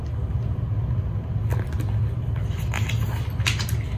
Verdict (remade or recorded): recorded